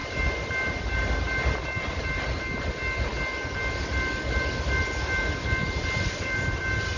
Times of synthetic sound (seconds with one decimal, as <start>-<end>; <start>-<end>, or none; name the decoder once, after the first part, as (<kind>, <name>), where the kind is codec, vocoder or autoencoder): none